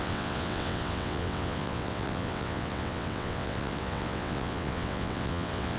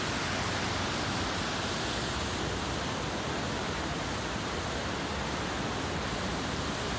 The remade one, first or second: first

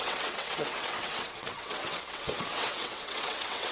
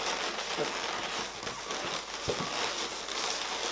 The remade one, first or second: first